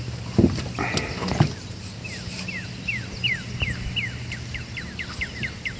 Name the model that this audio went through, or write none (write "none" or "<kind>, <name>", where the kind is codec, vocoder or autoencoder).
none